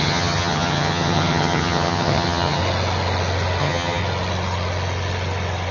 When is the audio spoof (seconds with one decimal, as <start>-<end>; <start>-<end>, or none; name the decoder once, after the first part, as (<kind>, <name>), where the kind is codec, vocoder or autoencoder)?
0.0-2.6 (vocoder, HiFi-GAN); 3.6-4.0